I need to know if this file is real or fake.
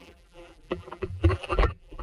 fake